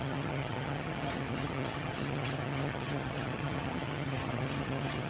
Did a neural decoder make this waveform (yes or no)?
yes